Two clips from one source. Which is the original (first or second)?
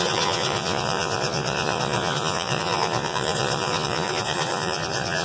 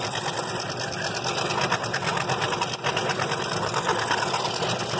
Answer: second